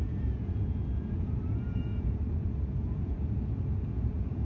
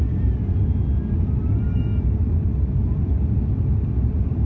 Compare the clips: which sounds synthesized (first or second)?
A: first